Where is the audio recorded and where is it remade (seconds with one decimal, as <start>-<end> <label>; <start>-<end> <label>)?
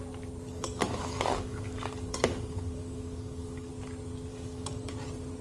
0.0-0.5 recorded; 0.5-3.7 remade; 3.7-4.3 recorded; 4.3-4.9 remade; 4.9-5.4 recorded